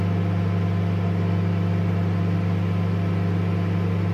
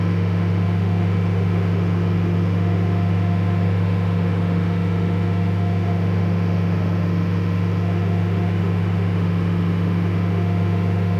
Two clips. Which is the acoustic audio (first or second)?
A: first